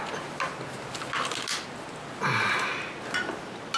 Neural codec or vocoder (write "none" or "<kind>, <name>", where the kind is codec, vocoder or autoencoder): none